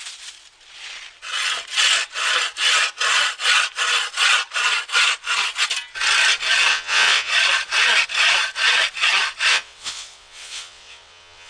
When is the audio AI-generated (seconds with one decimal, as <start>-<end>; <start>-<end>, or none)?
6.7-7.3; 9.5-11.5